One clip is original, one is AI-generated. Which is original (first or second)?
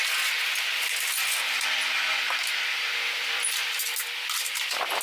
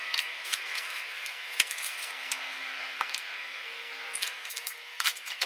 first